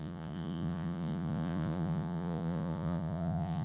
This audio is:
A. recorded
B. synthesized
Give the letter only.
B